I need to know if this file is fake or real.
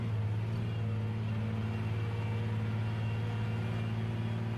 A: real